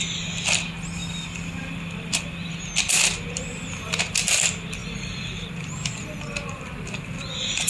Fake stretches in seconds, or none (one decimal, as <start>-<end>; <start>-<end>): 1.0-2.5; 4.8-7.7